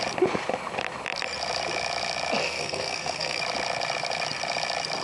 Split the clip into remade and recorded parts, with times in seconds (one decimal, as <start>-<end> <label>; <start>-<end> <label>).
0.0-2.4 recorded; 2.4-3.4 remade; 3.4-5.0 recorded